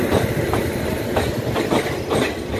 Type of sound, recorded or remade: recorded